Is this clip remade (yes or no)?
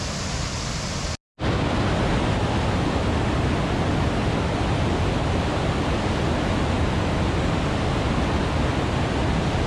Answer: no